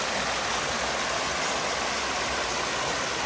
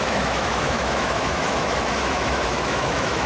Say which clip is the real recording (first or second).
first